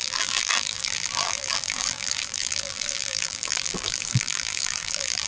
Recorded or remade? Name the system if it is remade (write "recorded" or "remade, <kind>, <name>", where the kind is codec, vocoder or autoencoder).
remade, vocoder, BigVGAN v2